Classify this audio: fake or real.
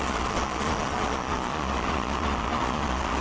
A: fake